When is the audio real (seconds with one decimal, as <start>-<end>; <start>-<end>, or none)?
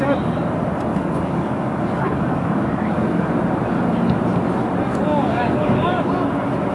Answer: 0.0-0.9; 3.3-4.9; 6.1-6.7